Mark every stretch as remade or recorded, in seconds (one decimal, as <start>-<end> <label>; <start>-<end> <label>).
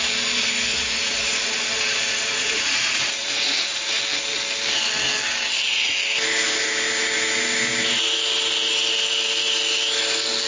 0.0-0.7 recorded; 0.7-4.0 remade; 4.0-10.5 recorded